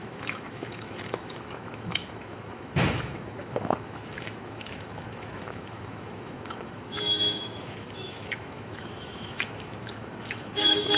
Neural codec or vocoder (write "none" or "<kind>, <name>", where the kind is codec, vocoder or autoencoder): autoencoder, DAC-VAE